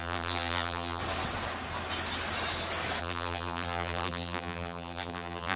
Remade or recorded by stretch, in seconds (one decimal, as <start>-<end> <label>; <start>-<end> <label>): 0.0-1.0 remade; 1.0-3.0 recorded; 3.0-5.6 remade